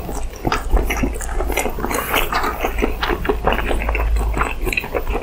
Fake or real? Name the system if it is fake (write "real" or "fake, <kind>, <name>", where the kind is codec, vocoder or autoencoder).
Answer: real